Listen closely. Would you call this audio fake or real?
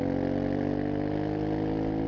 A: real